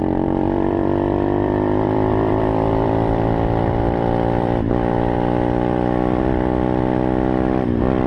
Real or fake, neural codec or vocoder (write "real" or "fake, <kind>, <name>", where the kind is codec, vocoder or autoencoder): fake, vocoder, BigVGAN v2